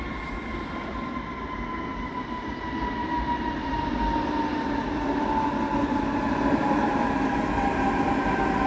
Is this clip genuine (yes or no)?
yes